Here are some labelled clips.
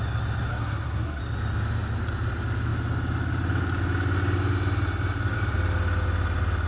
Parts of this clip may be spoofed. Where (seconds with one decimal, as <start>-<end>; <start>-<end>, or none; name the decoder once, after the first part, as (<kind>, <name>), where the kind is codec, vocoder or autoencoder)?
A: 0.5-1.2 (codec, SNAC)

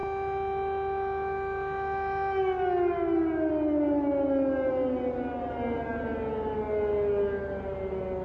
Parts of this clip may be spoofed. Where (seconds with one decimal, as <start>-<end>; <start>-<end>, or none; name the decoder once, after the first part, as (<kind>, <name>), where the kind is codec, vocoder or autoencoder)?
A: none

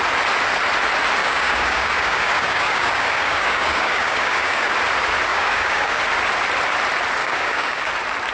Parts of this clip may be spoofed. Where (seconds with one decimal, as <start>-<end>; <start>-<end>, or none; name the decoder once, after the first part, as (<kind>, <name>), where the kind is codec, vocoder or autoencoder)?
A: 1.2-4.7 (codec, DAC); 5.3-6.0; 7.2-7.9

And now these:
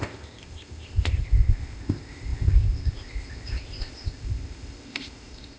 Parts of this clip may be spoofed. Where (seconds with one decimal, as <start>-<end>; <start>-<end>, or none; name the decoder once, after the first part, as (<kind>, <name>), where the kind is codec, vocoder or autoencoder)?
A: 0.0-5.6 (codec, ZipCodec)